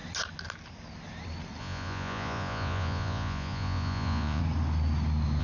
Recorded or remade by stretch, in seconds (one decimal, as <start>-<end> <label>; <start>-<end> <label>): 0.0-1.6 recorded; 1.6-4.4 remade; 4.4-5.4 recorded